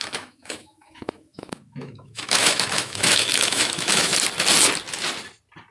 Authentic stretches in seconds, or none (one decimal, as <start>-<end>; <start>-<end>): 4.1-5.7